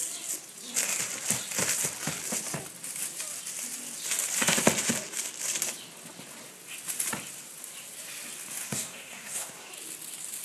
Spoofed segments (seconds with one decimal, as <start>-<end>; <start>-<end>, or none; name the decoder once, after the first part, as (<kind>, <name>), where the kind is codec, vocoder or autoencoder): 8.6-9.7 (codec, SNAC)